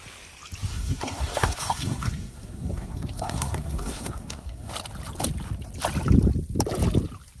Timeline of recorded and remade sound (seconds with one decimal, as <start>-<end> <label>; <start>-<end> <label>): 0.0-0.7 recorded; 0.7-4.7 remade; 4.7-7.4 recorded